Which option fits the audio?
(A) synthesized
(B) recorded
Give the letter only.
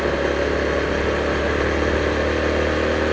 B